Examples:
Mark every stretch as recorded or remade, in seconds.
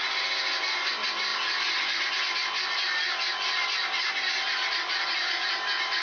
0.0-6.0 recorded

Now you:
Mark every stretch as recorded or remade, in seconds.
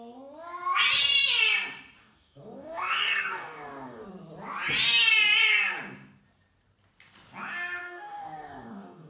0.0-2.0 recorded; 2.0-4.1 remade; 4.1-7.8 recorded; 7.8-9.1 remade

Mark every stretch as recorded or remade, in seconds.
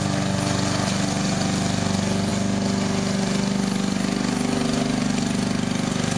0.0-6.2 recorded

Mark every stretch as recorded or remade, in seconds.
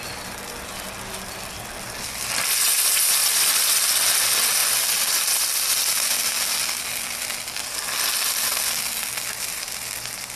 0.0-10.4 recorded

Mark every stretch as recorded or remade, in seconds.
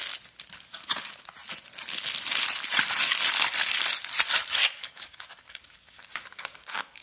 0.0-4.6 recorded; 4.6-7.0 remade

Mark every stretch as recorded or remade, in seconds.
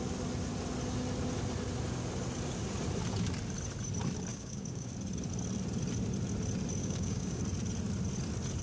0.0-4.3 recorded; 4.3-4.9 remade; 4.9-6.8 recorded; 6.8-7.4 remade; 7.4-8.6 recorded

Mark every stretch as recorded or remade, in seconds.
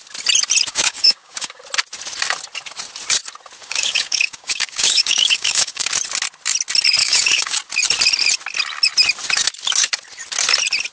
0.0-0.7 recorded; 0.7-1.6 remade; 1.6-3.6 recorded; 3.6-5.9 remade; 5.9-7.0 recorded; 7.0-7.6 remade; 7.6-10.9 recorded